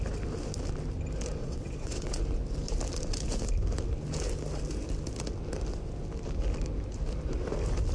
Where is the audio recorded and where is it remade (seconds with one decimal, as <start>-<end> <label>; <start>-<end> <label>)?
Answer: 0.0-1.4 recorded; 1.4-2.2 remade; 2.2-7.9 recorded